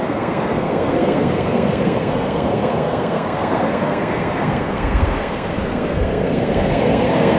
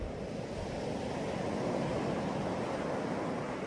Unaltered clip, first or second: second